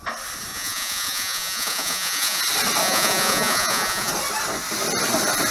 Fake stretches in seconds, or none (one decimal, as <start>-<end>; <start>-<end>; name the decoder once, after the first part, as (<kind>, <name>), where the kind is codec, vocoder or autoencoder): 0.5-2.4 (vocoder, Vocos); 2.8-4.1

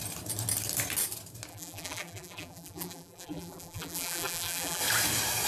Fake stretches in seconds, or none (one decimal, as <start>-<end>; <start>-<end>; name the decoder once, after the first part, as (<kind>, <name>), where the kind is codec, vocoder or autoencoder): 1.5-4.8 (vocoder, BigVGAN v2)

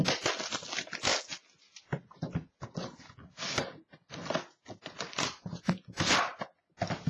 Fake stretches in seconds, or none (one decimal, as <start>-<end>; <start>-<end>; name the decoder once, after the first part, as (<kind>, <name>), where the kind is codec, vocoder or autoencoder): none

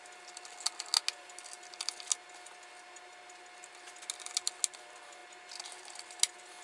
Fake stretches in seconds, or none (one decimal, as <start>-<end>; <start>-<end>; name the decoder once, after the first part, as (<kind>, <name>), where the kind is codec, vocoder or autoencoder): none

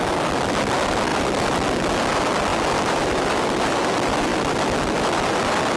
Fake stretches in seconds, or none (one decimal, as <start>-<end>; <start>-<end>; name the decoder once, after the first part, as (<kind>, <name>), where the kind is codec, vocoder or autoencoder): none

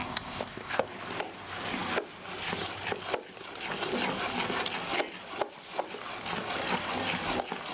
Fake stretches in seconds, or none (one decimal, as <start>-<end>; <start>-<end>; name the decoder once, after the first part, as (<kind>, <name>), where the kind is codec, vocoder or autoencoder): 0.0-0.9 (codec, ZipCodec)

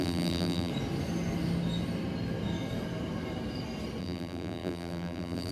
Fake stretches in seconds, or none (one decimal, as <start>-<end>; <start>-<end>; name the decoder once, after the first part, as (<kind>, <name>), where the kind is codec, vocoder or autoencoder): 0.0-0.7 (vocoder, BigVGAN v2); 4.0-5.5